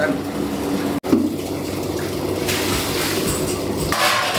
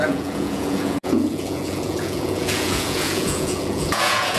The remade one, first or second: second